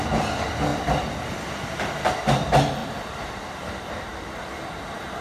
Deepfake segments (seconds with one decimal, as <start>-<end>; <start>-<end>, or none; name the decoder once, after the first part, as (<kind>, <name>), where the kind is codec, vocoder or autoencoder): 0.7-1.4 (vocoder, BigVGAN v2); 2.8-3.4; 4.1-4.6